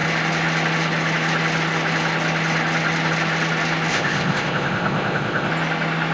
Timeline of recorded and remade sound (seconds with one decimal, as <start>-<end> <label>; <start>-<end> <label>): 0.0-3.9 recorded; 3.9-5.5 remade; 5.5-6.1 recorded